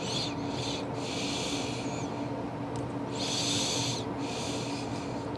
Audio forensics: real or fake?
real